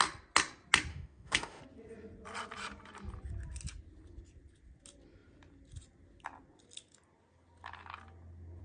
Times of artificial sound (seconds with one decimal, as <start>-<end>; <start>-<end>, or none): 0.9-1.6